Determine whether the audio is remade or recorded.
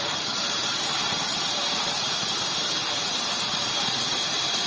remade